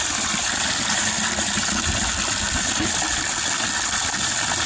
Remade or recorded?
remade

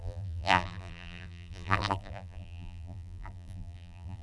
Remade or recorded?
remade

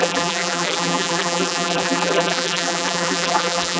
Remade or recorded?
remade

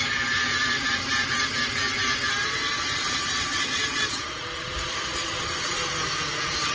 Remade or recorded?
remade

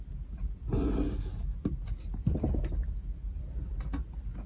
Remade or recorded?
recorded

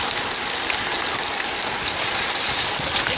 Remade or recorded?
recorded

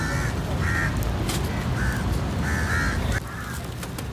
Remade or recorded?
recorded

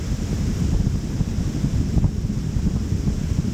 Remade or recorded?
recorded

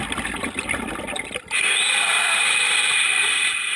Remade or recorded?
recorded